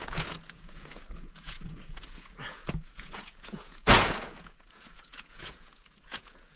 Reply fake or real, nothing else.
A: fake